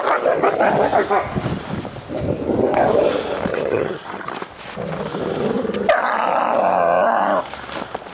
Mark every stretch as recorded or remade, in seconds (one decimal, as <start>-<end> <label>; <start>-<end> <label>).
0.0-3.5 recorded; 3.5-4.3 remade; 4.3-8.1 recorded